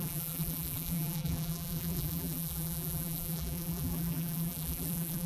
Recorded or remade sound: remade